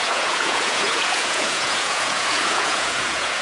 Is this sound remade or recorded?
remade